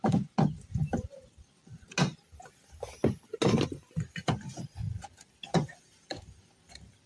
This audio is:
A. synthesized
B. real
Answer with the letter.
B